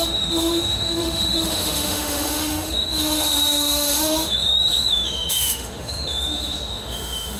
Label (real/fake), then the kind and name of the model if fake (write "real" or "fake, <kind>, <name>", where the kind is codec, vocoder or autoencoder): fake, autoencoder, DAC-VAE